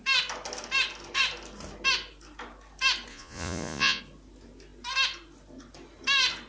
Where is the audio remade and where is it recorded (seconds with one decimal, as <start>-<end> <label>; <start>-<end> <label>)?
0.0-3.1 recorded; 3.1-4.0 remade; 4.0-6.5 recorded